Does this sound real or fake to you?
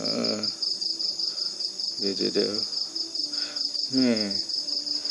real